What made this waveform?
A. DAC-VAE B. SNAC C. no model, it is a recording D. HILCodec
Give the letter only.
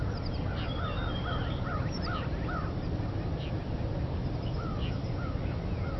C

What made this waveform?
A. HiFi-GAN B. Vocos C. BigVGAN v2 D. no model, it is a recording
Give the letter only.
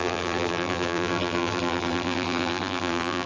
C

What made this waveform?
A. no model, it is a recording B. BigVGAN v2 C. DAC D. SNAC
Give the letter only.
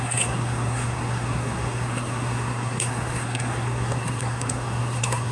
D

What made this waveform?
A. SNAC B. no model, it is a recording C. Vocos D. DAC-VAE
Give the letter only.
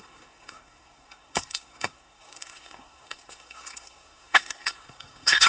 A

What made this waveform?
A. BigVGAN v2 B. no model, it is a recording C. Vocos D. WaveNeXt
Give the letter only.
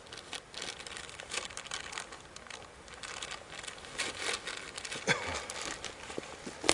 B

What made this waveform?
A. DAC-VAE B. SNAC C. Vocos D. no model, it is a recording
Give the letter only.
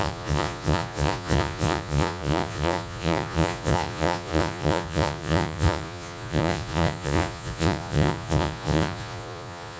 C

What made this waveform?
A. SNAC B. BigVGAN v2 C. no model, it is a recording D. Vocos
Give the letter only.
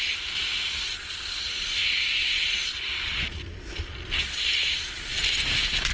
C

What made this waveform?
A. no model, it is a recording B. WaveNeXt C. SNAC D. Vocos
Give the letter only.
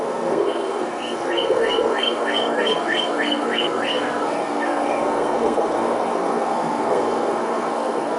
C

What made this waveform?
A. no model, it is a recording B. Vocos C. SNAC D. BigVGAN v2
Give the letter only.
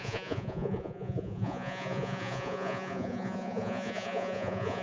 B